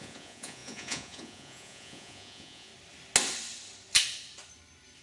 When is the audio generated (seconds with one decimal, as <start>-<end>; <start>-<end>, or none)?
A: 0.0-2.7